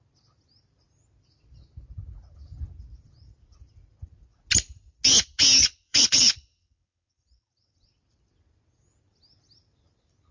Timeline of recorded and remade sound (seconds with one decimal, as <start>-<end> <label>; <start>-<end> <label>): 0.0-5.6 recorded; 5.6-7.9 remade; 7.9-10.3 recorded